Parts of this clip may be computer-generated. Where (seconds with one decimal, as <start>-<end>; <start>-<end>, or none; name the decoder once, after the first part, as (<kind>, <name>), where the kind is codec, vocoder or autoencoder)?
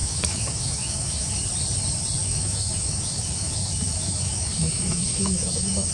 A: 0.0-1.3 (autoencoder, DAC-VAE); 2.2-5.9